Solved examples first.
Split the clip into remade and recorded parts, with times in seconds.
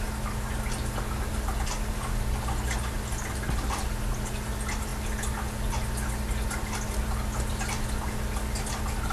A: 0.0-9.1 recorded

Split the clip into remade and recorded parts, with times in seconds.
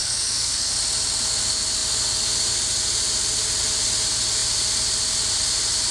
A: 0.0-0.7 remade; 0.7-5.9 recorded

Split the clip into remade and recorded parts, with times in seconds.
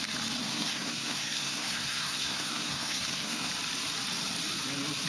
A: 0.0-0.4 recorded; 0.4-3.5 remade; 3.5-5.1 recorded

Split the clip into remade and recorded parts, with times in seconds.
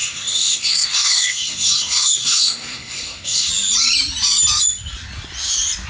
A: 0.0-3.5 remade; 3.5-5.9 recorded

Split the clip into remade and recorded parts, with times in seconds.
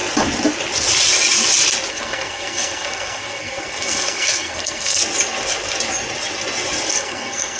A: 0.0-1.9 recorded; 1.9-5.0 remade; 5.0-6.9 recorded; 6.9-7.6 remade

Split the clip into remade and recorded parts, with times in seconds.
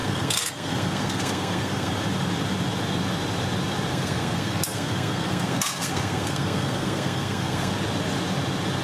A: 0.0-1.9 remade; 1.9-3.9 recorded; 3.9-7.7 remade; 7.7-8.8 recorded